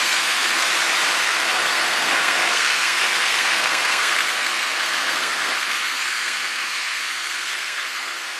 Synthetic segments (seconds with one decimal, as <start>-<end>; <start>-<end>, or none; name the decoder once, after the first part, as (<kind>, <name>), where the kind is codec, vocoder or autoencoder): 0.0-0.7 (codec, SNAC); 1.2-8.4